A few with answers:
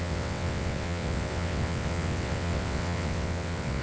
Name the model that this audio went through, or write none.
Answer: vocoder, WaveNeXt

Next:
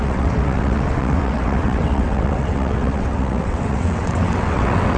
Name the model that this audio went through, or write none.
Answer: vocoder, WaveNeXt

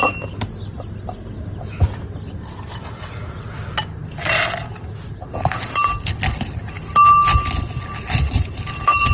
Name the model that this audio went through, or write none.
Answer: none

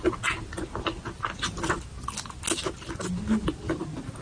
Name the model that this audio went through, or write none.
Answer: none